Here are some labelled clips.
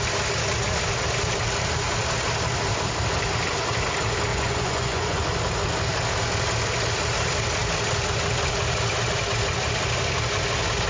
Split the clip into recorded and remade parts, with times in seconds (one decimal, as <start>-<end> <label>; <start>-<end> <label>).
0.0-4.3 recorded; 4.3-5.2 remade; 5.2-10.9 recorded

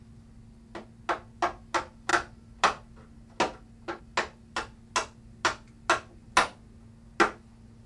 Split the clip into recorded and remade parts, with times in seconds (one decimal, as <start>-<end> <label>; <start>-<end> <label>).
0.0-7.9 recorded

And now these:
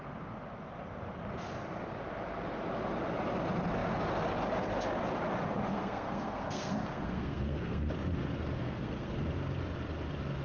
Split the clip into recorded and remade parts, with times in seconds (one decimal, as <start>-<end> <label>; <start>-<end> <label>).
0.0-5.7 recorded; 5.7-7.9 remade; 7.9-8.6 recorded; 8.6-9.1 remade; 9.1-10.4 recorded

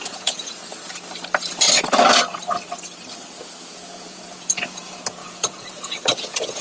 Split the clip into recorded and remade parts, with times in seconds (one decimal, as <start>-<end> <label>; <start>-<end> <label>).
0.0-0.6 remade; 0.6-3.6 recorded; 3.6-6.6 remade